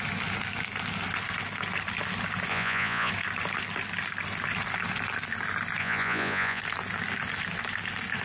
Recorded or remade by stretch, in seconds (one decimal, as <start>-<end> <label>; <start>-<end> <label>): 0.0-2.5 recorded; 2.5-3.1 remade; 3.1-5.8 recorded; 5.8-6.6 remade; 6.6-8.2 recorded